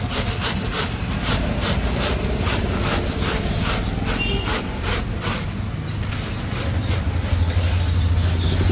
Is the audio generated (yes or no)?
no